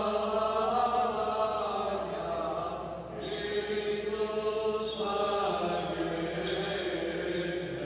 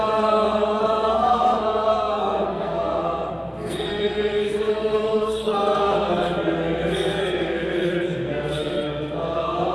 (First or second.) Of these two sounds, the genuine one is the first